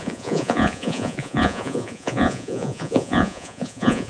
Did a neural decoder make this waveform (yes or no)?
yes